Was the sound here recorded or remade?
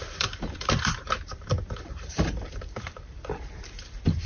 remade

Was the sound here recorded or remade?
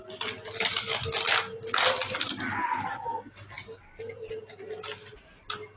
recorded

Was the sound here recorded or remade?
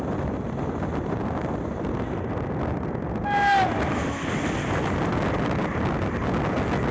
recorded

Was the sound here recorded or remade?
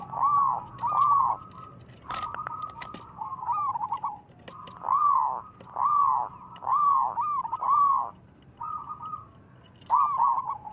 recorded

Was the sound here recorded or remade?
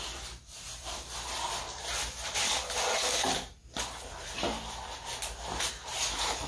recorded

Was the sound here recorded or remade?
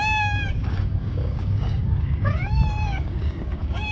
remade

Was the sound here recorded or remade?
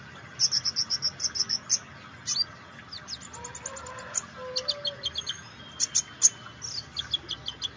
recorded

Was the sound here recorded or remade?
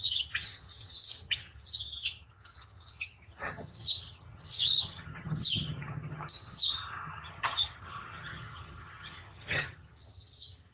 remade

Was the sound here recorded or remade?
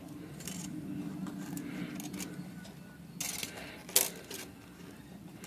recorded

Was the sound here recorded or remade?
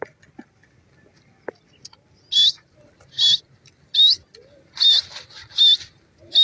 recorded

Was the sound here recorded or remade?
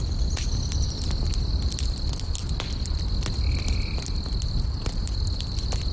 recorded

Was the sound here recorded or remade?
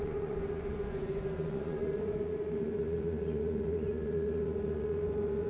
remade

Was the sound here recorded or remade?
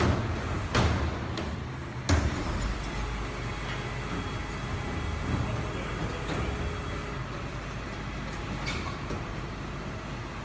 recorded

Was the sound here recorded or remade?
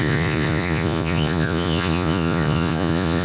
remade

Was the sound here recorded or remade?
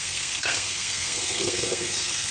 remade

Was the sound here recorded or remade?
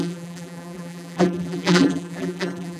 remade